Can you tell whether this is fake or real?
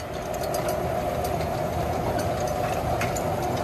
real